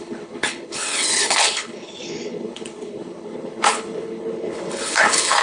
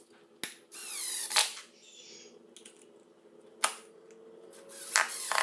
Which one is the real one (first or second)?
second